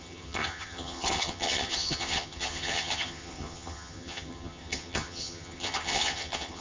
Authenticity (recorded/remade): remade